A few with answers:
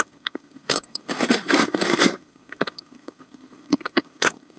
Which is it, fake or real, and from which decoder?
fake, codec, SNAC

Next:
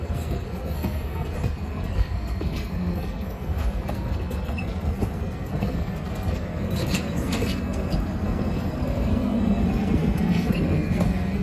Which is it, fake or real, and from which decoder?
fake, codec, SNAC